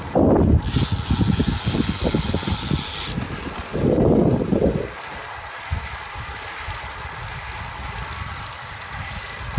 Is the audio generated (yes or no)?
no